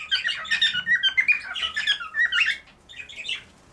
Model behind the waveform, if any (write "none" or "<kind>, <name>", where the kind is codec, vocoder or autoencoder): none